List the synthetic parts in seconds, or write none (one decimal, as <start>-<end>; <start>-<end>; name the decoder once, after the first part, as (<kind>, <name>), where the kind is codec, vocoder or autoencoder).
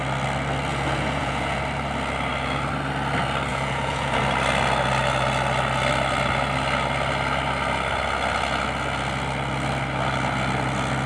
0.7-1.6 (vocoder, Vocos); 3.5-4.2